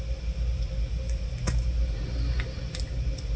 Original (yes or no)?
yes